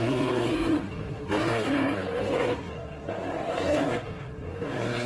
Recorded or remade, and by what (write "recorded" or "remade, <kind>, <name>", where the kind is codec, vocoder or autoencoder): remade, codec, SNAC